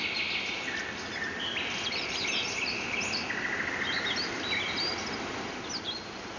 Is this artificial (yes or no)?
no